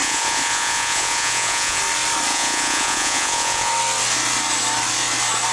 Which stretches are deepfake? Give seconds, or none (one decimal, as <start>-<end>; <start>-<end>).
0.0-1.8; 2.3-3.7